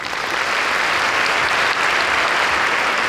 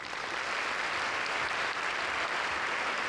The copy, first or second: second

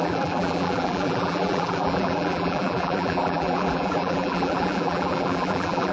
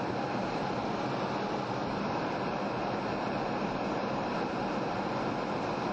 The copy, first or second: first